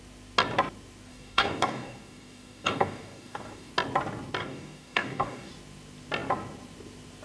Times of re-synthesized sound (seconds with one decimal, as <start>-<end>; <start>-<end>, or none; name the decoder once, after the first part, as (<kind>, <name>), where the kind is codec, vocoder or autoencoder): 1.1-3.7 (codec, DAC); 4.4-5.5